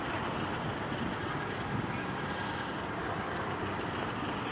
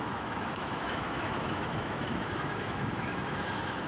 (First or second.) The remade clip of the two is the second